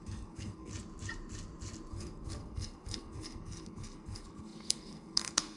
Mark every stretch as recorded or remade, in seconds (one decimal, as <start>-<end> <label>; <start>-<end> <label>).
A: 0.0-0.7 remade; 0.7-1.9 recorded; 1.9-5.6 remade